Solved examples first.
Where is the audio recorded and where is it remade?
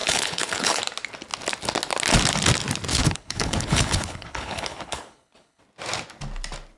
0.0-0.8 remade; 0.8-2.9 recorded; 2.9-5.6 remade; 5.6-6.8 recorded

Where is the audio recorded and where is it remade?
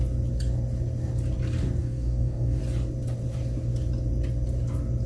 0.0-1.8 recorded; 1.8-2.6 remade; 2.6-5.1 recorded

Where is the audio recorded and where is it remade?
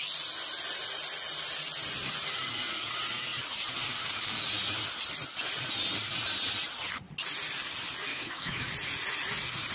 0.0-8.1 recorded; 8.1-8.7 remade; 8.7-9.7 recorded